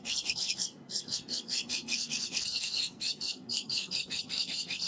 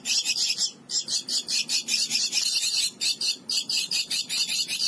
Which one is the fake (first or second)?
first